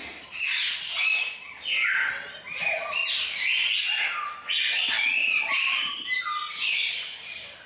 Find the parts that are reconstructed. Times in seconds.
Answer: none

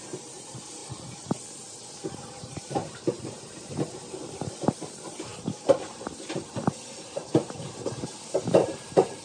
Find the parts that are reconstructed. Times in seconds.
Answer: 0.0-0.8 (vocoder, BigVGAN v2); 2.0-5.3; 8.5-9.2

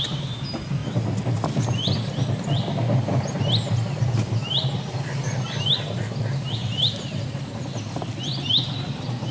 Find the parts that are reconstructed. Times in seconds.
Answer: none